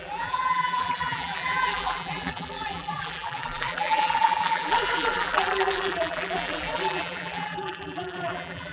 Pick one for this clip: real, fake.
fake